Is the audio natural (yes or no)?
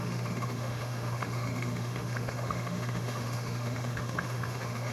no